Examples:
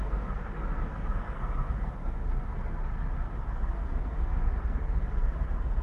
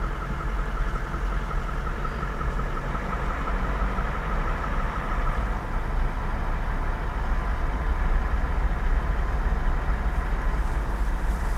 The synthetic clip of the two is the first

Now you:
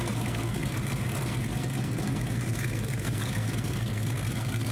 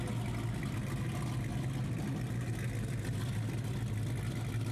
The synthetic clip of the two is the first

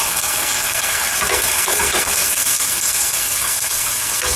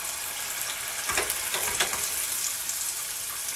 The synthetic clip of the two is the first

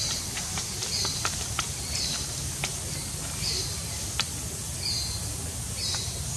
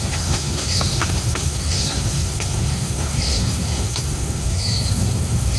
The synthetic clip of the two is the second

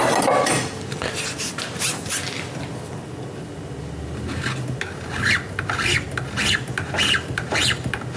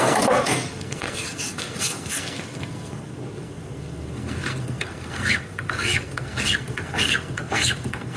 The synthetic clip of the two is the second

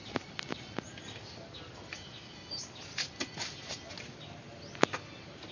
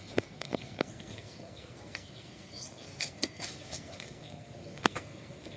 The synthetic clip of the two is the second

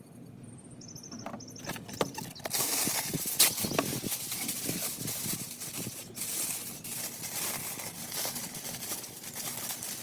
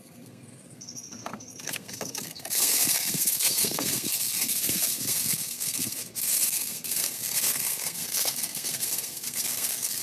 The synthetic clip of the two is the second